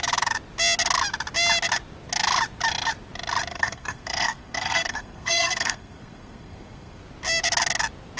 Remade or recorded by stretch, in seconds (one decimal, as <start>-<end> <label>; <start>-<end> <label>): 0.0-3.5 recorded; 3.5-7.0 remade; 7.0-8.2 recorded